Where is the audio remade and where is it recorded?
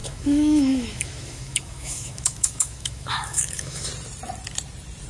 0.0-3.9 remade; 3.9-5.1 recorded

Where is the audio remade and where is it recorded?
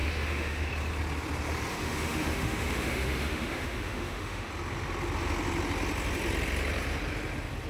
0.0-0.7 remade; 0.7-1.7 recorded; 1.7-4.5 remade; 4.5-7.7 recorded